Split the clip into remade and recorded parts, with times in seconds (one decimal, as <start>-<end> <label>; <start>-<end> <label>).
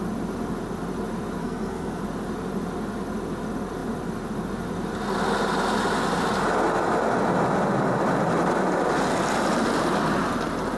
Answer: 0.0-1.4 recorded; 1.4-2.0 remade; 2.0-10.8 recorded